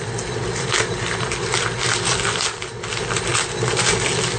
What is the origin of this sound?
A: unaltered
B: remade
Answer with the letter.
A